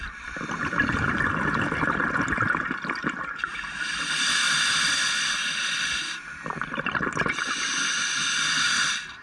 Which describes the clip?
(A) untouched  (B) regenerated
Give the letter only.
A